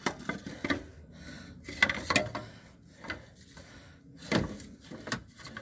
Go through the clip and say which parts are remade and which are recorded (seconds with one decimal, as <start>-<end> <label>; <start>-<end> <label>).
0.0-5.6 recorded